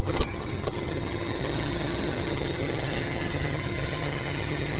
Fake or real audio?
fake